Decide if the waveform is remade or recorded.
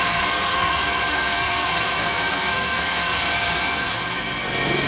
remade